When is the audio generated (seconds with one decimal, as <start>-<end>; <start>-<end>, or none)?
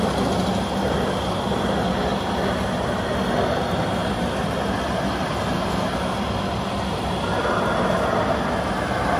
none